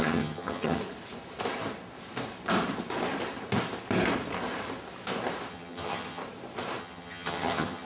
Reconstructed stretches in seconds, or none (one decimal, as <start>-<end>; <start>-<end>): 0.0-0.8; 5.5-6.2; 6.8-7.8